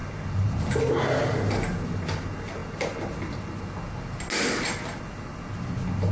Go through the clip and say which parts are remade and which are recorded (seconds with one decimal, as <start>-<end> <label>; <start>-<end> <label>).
0.0-6.1 recorded